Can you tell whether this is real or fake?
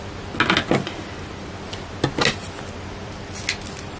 real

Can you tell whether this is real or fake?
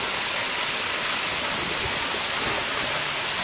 real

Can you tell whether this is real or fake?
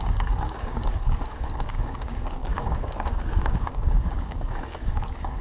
fake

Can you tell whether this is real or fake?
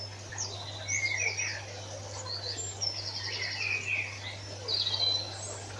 real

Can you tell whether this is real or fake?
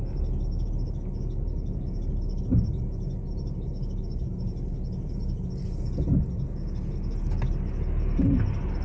real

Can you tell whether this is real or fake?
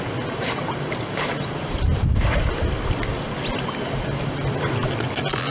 real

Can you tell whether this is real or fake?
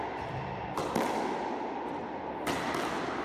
real